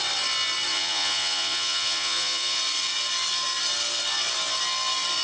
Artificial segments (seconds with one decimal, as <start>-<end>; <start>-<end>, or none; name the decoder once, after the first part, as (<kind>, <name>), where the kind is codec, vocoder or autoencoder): 0.7-2.6 (vocoder, Vocos)